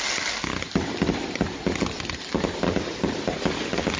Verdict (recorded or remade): recorded